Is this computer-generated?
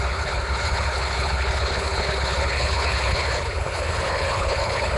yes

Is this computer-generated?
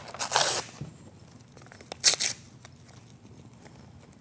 no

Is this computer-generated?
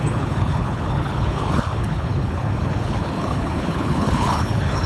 yes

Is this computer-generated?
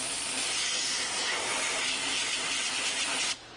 no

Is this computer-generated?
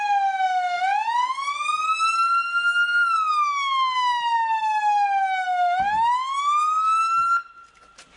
no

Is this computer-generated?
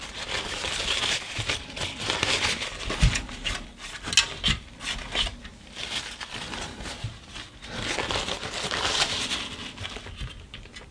no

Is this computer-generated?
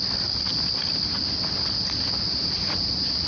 no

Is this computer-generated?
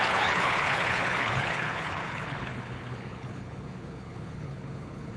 yes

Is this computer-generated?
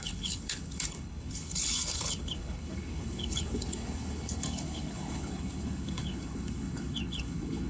yes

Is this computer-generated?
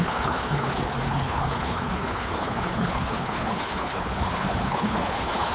yes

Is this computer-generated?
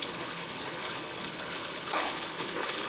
yes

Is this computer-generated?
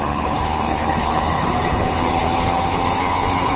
yes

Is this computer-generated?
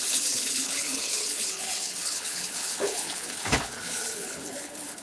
yes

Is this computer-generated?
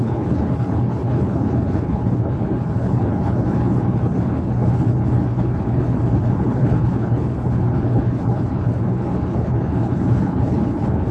yes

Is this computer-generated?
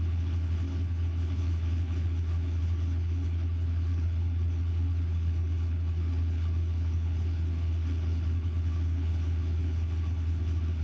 yes